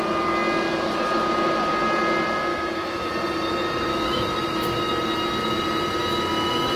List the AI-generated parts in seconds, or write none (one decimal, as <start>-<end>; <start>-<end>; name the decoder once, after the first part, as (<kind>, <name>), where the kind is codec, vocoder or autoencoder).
2.5-3.1 (autoencoder, DAC-VAE); 3.9-4.9